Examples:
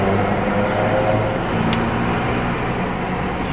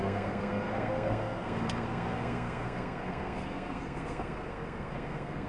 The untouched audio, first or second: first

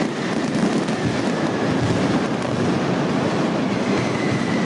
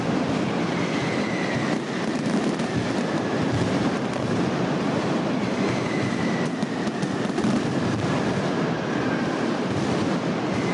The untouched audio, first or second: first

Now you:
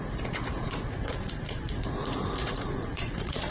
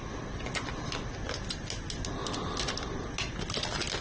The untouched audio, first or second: second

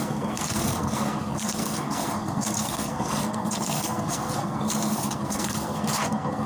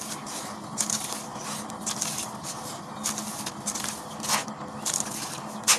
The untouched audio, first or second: second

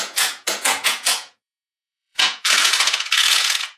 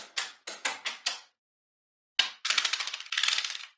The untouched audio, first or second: second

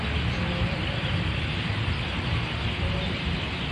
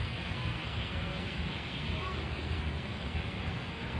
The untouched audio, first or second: first